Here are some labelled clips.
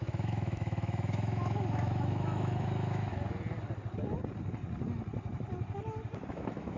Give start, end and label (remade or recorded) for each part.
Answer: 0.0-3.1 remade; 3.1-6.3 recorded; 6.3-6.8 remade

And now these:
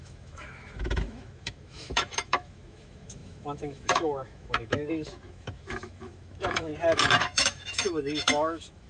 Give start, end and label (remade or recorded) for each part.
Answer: 0.0-6.7 remade; 6.7-7.2 recorded; 7.2-8.9 remade

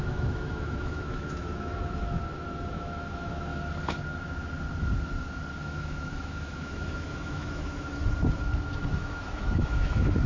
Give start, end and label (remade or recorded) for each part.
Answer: 0.0-2.2 remade; 2.2-2.7 recorded; 2.7-3.5 remade; 3.5-5.6 recorded; 5.6-8.0 remade; 8.0-8.9 recorded; 8.9-10.3 remade